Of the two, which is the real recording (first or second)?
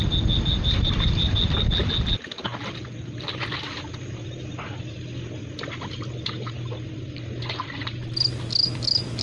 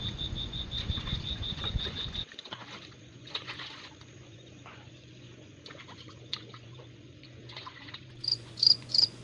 first